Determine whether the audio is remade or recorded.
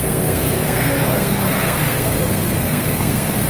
remade